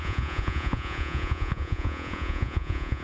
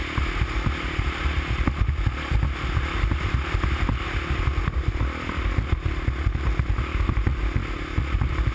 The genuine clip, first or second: second